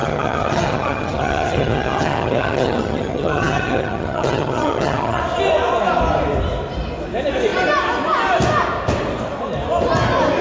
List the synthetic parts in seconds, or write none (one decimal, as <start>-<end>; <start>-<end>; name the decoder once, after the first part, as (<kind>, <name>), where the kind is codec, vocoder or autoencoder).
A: 0.0-5.2 (vocoder, HiFi-GAN)